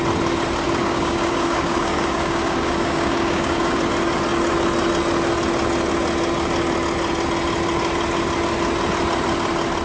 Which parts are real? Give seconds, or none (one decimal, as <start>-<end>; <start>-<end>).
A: 0.0-0.8; 3.8-9.8